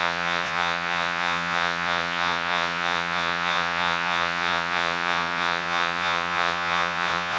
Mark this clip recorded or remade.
remade